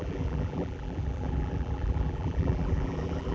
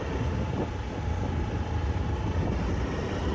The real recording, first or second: second